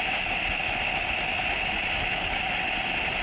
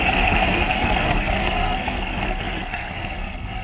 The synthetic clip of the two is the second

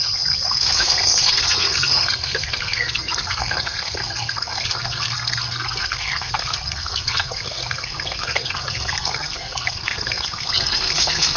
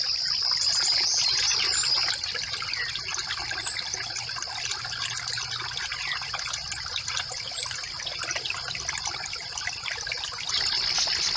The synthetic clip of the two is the first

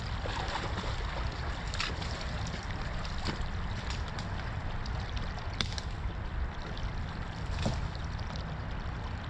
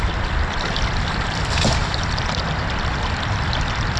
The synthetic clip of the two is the second